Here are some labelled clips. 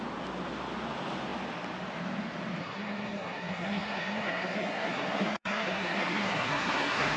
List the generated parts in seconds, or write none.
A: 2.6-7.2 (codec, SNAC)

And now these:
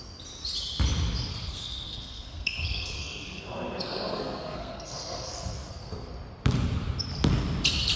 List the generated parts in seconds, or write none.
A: 1.3-6.1 (codec, SNAC)

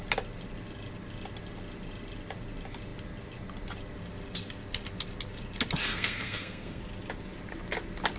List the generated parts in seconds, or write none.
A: 5.8-6.8 (codec, SNAC)

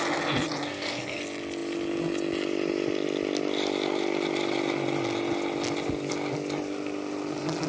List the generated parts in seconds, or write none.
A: 0.6-1.2 (codec, SNAC)

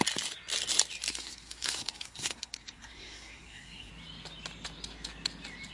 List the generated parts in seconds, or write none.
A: 1.1-3.9 (codec, SNAC)

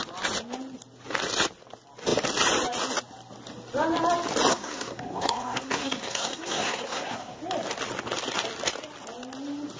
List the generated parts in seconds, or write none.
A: 4.5-7.4 (codec, SNAC)